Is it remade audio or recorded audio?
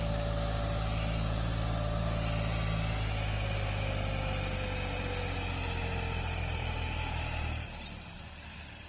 recorded